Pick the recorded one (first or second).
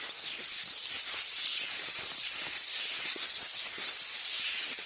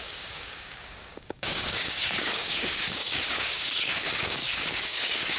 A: first